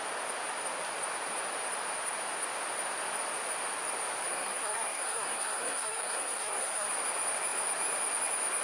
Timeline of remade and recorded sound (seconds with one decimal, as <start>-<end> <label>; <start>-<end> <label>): 0.0-4.3 recorded; 4.3-6.9 remade; 6.9-8.6 recorded